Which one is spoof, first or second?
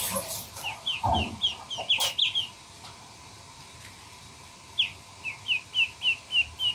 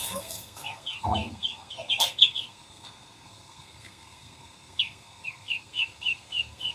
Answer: second